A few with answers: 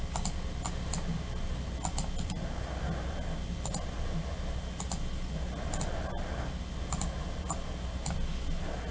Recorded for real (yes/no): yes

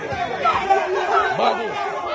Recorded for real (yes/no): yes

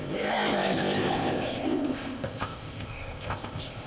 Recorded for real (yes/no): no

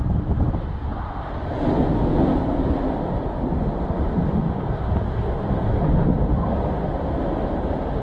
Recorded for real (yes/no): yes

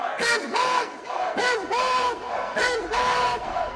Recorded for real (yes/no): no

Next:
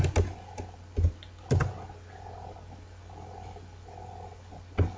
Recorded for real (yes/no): yes